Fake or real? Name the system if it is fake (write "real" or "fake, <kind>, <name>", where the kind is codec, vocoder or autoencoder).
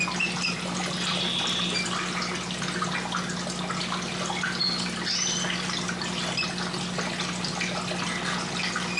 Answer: real